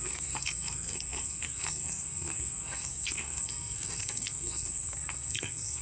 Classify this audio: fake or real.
fake